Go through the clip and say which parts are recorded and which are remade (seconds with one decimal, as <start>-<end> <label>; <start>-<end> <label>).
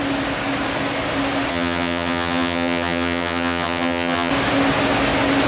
0.0-1.5 recorded; 1.5-4.3 remade; 4.3-5.5 recorded